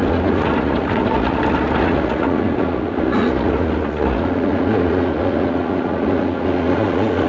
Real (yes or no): no